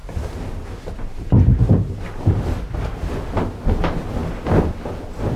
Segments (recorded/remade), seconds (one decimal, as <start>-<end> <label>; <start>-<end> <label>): 0.0-5.4 recorded